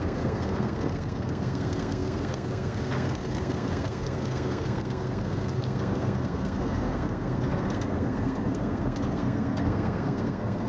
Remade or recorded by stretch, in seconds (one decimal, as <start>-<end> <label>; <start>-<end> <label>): 0.0-10.7 remade